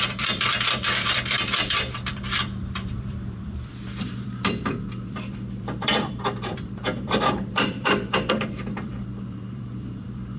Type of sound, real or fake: fake